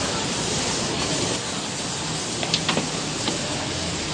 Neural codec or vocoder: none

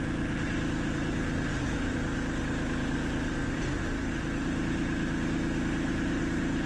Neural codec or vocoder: none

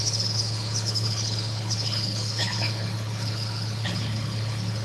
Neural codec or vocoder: codec, HILCodec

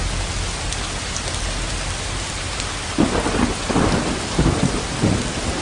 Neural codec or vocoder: none